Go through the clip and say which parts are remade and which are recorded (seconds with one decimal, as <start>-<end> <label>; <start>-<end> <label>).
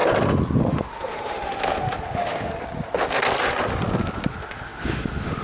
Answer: 0.0-0.6 recorded; 0.6-2.5 remade; 2.5-4.3 recorded; 4.3-5.4 remade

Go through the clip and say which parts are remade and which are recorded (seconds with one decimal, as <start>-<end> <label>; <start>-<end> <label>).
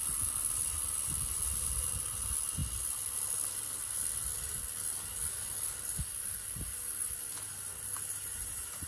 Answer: 0.0-8.9 recorded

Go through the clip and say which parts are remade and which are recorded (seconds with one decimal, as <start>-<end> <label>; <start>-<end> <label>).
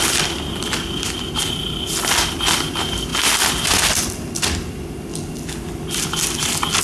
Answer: 0.0-6.8 recorded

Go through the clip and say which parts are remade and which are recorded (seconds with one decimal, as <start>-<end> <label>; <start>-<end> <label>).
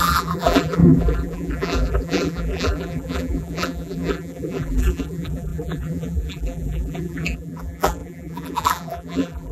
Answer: 0.0-9.5 remade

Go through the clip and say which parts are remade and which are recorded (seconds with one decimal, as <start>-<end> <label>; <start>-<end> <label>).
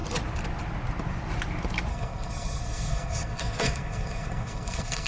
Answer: 0.0-1.9 recorded; 1.9-5.1 remade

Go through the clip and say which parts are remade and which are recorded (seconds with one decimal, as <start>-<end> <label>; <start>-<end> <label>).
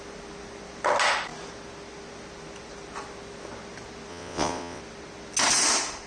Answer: 0.0-4.1 recorded; 4.1-4.8 remade; 4.8-6.1 recorded